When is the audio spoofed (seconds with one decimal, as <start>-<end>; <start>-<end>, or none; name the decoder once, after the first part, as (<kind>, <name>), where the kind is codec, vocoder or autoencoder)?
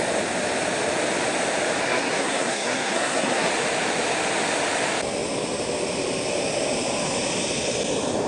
1.8-3.5 (codec, SNAC)